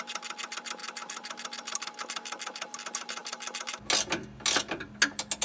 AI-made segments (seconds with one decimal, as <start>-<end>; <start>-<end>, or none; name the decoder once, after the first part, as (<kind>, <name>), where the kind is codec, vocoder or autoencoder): none